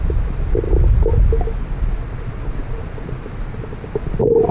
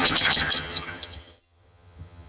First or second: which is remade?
second